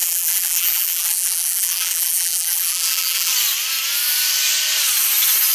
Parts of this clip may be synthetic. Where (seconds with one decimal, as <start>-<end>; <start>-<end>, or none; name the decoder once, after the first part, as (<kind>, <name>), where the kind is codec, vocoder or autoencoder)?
0.0-3.3 (vocoder, BigVGAN v2)